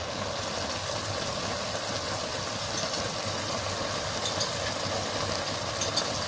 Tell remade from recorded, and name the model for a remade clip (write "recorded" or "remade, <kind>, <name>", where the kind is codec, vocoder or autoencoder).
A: recorded